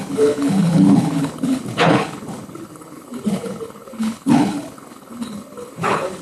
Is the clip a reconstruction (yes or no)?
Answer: yes